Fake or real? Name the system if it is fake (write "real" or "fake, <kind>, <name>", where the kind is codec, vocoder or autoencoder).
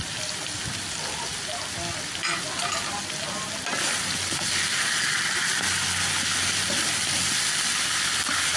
real